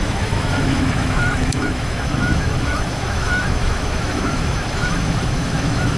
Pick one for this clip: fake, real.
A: fake